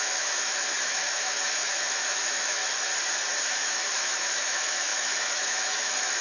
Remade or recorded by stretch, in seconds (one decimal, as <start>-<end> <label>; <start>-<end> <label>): 0.0-2.6 remade; 2.6-3.5 recorded; 3.5-6.2 remade